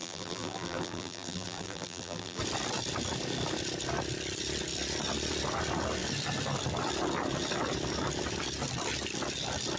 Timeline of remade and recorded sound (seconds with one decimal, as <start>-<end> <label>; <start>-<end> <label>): 0.0-2.4 remade; 2.4-9.8 recorded